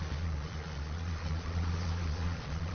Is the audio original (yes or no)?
no